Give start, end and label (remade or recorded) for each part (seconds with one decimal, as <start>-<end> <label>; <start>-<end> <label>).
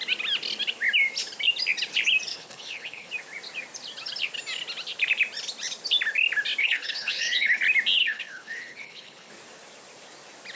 0.0-2.3 recorded; 2.3-3.1 remade; 3.1-6.6 recorded; 6.6-7.6 remade; 7.6-8.0 recorded; 8.0-9.3 remade; 9.3-10.6 recorded